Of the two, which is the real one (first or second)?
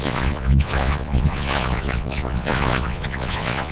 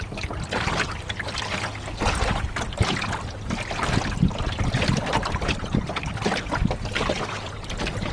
second